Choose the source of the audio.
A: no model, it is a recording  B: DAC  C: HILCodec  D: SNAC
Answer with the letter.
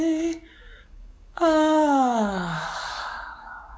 B